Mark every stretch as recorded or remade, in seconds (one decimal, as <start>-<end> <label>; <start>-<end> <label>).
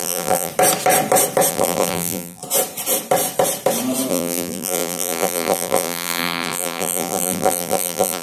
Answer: 0.0-0.5 remade; 0.5-1.5 recorded; 1.5-2.4 remade; 2.4-4.1 recorded; 4.1-8.2 remade